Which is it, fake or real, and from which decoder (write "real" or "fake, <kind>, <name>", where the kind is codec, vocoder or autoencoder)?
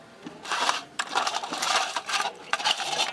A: real